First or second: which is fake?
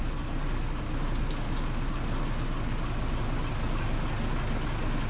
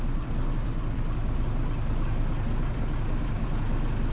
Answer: second